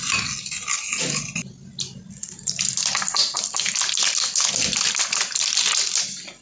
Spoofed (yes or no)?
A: no